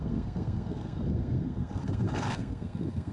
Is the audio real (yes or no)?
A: no